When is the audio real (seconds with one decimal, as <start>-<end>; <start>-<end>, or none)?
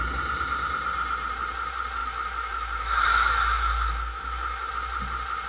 0.0-2.0; 4.7-5.5